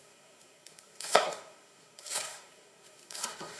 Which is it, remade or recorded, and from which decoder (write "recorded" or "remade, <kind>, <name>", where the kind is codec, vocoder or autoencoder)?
remade, codec, SNAC